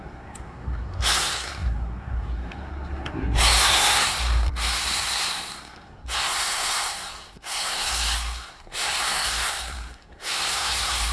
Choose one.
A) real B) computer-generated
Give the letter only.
B